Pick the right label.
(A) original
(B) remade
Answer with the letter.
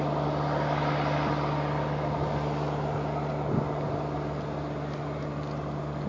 A